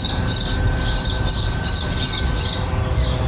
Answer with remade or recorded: recorded